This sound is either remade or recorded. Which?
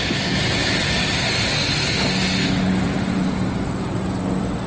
recorded